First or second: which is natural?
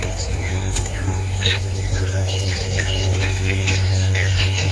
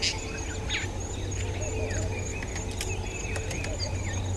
second